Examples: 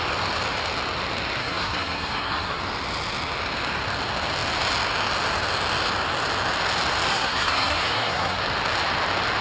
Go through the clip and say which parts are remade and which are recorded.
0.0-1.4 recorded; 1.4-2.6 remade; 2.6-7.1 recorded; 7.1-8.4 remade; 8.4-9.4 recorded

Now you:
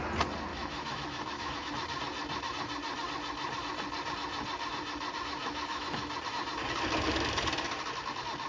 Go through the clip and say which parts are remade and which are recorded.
0.0-0.5 recorded; 0.5-1.7 remade; 1.7-5.4 recorded; 5.4-6.1 remade; 6.1-8.5 recorded